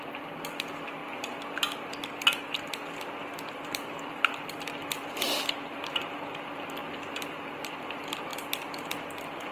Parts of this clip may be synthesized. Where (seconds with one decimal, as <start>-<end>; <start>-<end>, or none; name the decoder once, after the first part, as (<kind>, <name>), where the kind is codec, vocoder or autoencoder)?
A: 0.0-1.0 (vocoder, BigVGAN v2); 3.7-8.3; 8.8-9.5